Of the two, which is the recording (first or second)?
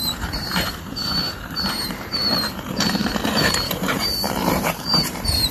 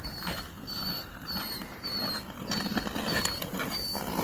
second